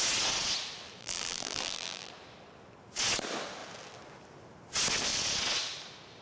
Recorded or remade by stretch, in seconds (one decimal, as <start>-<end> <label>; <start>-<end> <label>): 0.0-1.0 recorded; 1.0-2.1 remade; 2.1-6.2 recorded